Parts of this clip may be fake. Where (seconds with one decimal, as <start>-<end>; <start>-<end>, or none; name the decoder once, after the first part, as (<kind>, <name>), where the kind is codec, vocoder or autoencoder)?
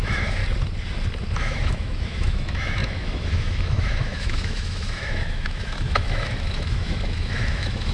0.0-0.4 (autoencoder, DAC-VAE); 1.4-7.9